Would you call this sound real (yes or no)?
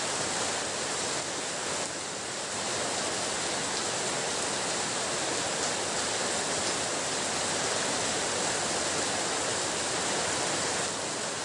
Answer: yes